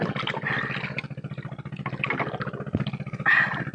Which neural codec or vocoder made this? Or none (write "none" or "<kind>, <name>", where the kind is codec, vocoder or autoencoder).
none